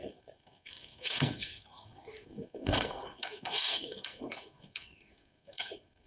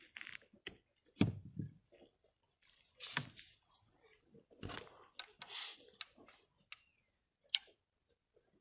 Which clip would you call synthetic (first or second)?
first